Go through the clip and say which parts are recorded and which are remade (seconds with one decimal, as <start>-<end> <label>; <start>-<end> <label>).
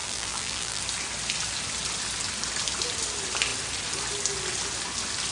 0.0-0.8 remade; 0.8-5.3 recorded